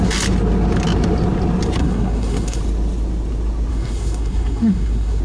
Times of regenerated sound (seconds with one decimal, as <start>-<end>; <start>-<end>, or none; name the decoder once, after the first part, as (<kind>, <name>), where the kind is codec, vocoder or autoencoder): 1.8-2.6 (codec, SNAC); 3.7-5.2